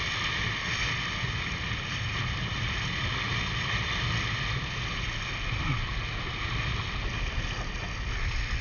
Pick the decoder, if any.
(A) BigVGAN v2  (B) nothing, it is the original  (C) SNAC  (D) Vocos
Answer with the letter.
B